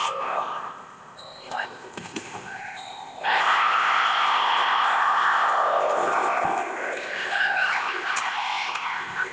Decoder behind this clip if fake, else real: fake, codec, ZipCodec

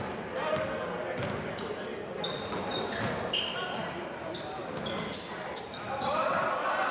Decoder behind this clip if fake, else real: real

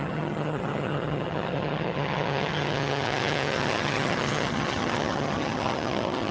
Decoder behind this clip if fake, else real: fake, vocoder, HiFi-GAN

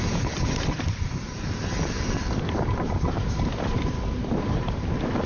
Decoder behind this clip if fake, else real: real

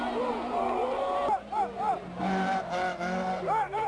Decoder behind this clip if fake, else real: real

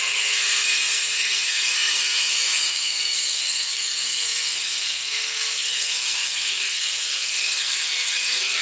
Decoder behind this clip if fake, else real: fake, codec, SNAC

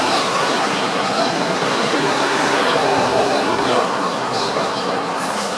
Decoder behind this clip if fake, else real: fake, codec, SNAC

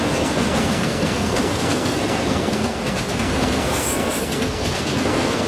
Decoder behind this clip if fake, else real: fake, codec, SNAC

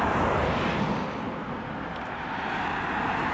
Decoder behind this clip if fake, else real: real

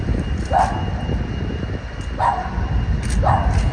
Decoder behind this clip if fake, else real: fake, vocoder, BigVGAN v2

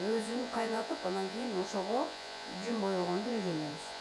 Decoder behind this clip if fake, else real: fake, vocoder, Vocos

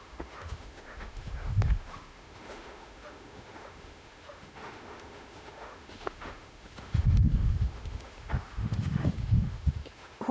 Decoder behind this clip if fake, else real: fake, autoencoder, DAC-VAE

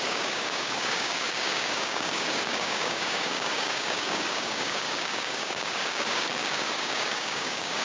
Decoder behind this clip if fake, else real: fake, codec, DAC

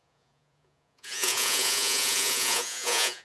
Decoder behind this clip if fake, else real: fake, vocoder, Vocos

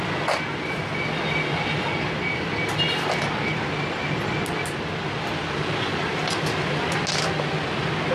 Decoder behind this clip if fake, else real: real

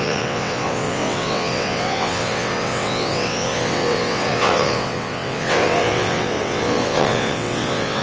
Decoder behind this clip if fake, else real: fake, vocoder, WaveNeXt